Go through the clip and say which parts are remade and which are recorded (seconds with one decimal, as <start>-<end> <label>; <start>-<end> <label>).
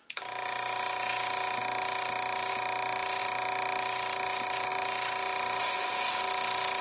0.0-5.6 recorded; 5.6-6.2 remade; 6.2-6.8 recorded